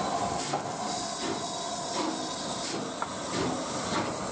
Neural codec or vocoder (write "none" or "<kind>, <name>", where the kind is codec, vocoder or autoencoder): none